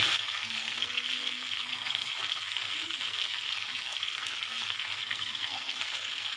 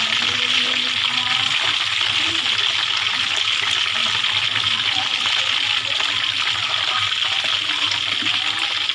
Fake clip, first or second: first